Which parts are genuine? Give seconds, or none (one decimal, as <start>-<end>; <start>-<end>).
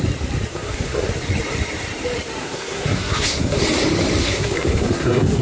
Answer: 0.0-0.5; 1.1-2.4; 3.6-4.2